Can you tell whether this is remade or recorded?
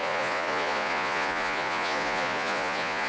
remade